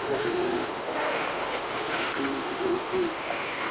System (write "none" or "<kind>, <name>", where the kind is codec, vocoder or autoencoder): autoencoder, DAC-VAE